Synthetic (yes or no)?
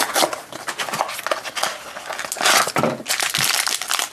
no